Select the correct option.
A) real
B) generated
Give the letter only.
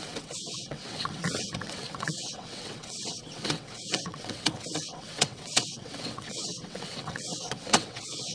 B